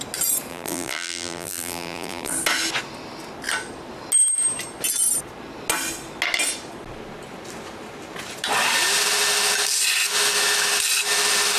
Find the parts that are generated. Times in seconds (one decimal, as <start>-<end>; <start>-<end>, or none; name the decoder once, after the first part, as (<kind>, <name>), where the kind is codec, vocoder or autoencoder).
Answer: 0.5-2.3 (vocoder, BigVGAN v2)